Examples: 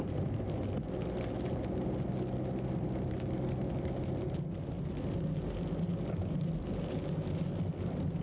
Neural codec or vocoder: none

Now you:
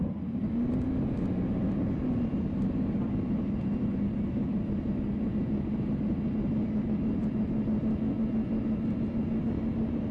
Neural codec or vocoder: none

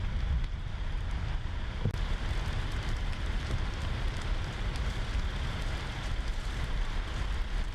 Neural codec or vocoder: none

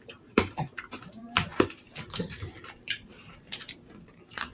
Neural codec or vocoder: vocoder, BigVGAN v2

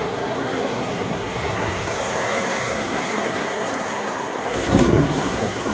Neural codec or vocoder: codec, SNAC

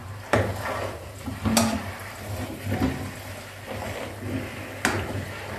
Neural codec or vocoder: none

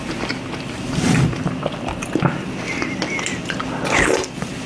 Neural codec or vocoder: none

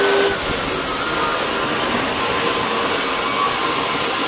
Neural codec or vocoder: none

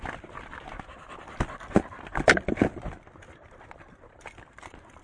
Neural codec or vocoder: none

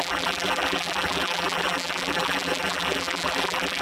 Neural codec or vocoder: vocoder, BigVGAN v2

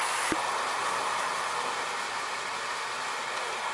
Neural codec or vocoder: none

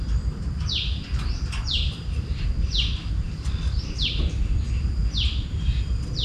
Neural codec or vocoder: none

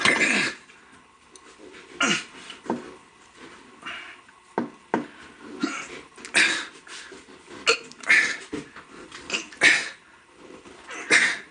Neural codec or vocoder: none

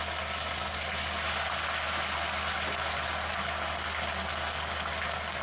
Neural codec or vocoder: none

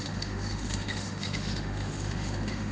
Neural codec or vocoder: autoencoder, DAC-VAE